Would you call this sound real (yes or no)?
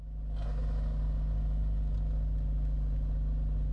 yes